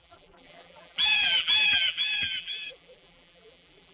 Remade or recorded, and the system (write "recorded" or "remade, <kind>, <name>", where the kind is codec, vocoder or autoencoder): remade, vocoder, BigVGAN v2